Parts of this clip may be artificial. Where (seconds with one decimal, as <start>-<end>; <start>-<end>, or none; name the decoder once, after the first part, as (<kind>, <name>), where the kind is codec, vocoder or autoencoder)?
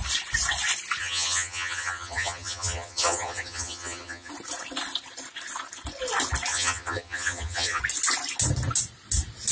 1.0-4.3 (vocoder, HiFi-GAN); 6.5-7.8